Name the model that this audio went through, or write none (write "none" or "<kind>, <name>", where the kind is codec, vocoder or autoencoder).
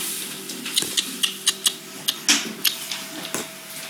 none